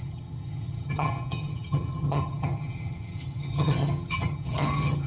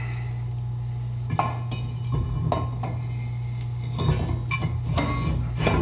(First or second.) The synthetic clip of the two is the first